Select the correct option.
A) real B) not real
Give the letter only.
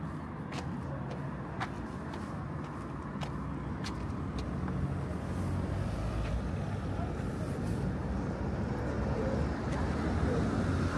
A